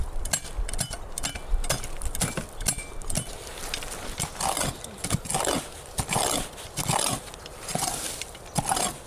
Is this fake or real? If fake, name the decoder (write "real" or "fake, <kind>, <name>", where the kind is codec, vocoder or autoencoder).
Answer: real